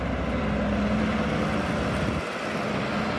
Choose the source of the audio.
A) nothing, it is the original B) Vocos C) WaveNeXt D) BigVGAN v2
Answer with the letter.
A